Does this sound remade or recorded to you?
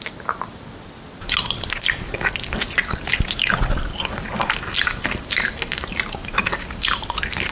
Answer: recorded